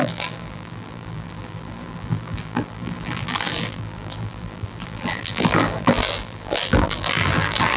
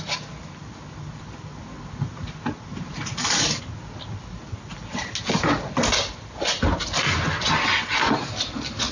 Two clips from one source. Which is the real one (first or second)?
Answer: second